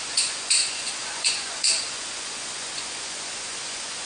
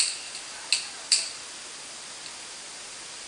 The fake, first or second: first